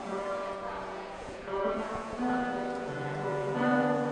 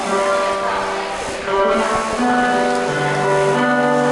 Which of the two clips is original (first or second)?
second